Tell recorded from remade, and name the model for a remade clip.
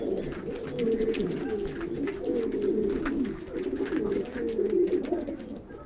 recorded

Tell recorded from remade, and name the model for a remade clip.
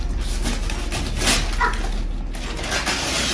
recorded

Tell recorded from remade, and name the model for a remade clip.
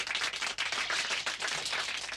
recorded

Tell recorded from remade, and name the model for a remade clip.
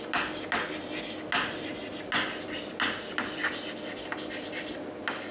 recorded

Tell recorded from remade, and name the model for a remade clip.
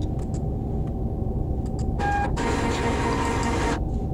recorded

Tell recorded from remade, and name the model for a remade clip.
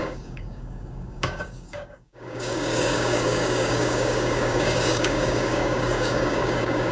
remade, codec, DAC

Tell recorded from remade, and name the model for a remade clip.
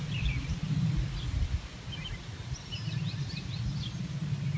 recorded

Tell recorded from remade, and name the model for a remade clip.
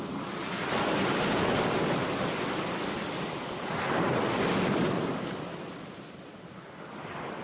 recorded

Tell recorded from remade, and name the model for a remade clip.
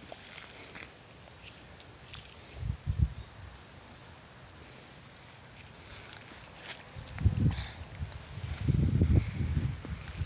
recorded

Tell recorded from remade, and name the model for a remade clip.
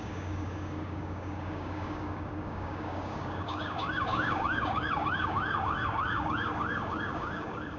remade, codec, DAC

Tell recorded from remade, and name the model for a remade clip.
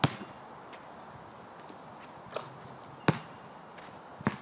recorded